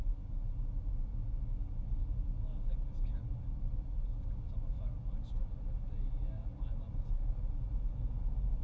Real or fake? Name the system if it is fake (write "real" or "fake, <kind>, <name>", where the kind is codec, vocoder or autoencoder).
real